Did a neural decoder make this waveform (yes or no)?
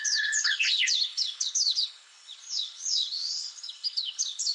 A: yes